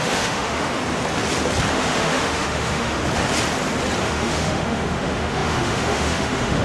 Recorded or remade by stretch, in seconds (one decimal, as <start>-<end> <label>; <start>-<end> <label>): 0.0-0.8 remade; 0.8-1.7 recorded; 1.7-3.0 remade; 3.0-4.0 recorded; 4.0-6.6 remade